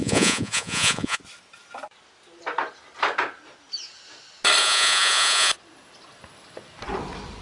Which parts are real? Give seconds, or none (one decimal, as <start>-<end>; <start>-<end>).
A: 1.2-4.6; 5.5-7.4